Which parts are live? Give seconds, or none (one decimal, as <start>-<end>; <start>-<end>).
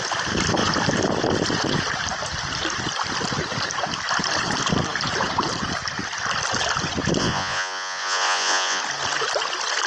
0.0-7.2; 8.8-9.9